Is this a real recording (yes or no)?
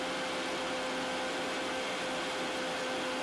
yes